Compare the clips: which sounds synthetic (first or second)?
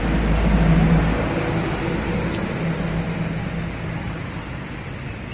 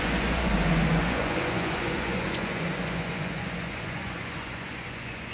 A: second